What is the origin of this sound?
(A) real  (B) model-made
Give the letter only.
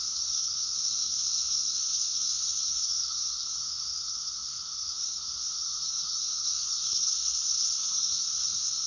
B